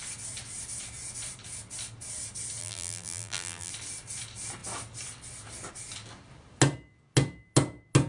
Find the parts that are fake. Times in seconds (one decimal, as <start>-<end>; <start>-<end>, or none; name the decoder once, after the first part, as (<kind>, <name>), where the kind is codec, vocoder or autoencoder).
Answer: 2.6-3.7 (vocoder, BigVGAN v2)